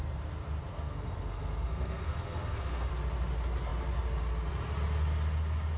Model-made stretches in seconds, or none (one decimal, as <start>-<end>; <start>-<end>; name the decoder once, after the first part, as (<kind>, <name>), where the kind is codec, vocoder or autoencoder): 0.7-2.9 (codec, SNAC)